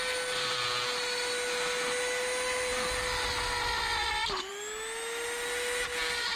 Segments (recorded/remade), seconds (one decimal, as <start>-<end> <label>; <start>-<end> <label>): 0.0-6.4 recorded